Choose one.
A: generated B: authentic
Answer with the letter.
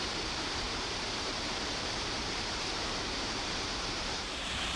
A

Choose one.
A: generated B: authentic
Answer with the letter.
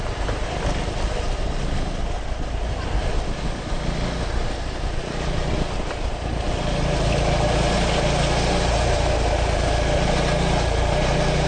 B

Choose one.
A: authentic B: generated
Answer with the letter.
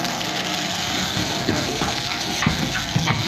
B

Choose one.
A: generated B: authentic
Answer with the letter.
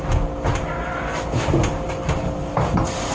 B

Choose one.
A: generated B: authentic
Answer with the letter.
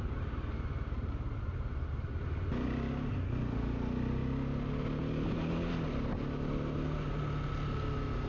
B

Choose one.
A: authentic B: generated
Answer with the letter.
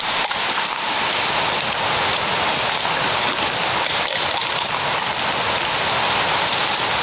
A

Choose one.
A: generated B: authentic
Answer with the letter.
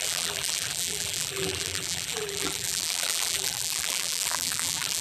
A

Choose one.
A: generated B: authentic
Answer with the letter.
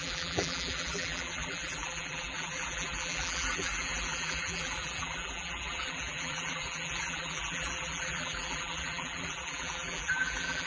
A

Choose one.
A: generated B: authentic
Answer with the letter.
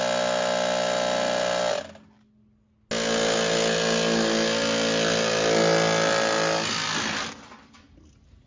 B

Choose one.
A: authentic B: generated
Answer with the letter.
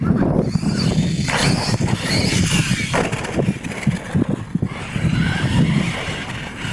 A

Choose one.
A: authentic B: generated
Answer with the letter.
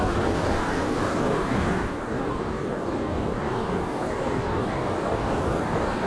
B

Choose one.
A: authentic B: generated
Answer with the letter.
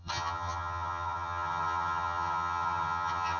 B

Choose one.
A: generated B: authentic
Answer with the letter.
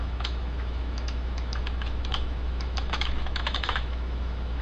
A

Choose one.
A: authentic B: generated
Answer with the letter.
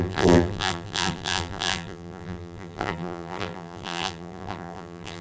B